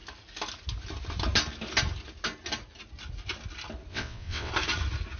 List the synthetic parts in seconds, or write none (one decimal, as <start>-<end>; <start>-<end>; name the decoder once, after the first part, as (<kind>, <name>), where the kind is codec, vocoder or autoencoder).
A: 3.9-4.5 (vocoder, WaveNeXt)

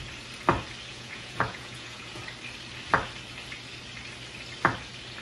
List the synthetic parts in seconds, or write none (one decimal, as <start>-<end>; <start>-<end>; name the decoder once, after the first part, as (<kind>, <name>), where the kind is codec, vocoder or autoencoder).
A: 0.9-2.2 (vocoder, Vocos)

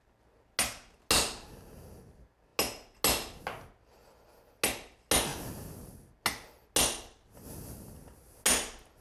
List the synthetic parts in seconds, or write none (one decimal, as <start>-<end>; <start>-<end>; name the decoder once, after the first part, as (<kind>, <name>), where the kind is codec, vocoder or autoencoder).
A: none

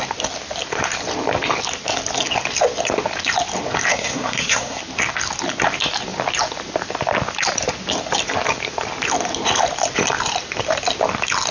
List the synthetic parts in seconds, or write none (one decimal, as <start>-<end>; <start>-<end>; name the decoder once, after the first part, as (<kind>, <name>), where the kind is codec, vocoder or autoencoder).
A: 3.9-4.8 (codec, SNAC)

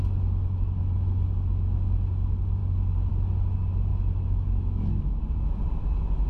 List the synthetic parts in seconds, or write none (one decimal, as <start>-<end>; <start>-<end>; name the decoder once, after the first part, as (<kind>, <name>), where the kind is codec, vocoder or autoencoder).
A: 3.9-5.2 (autoencoder, DAC-VAE)

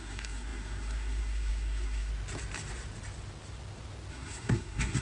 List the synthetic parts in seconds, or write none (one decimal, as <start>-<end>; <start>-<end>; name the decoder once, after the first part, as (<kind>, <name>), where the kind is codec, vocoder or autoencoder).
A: 0.0-2.1 (codec, SNAC); 4.1-5.0